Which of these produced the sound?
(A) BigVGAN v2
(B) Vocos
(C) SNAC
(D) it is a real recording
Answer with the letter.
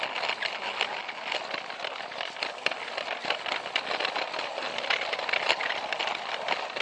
D